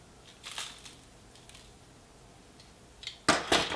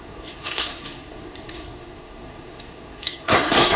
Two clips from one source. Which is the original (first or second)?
first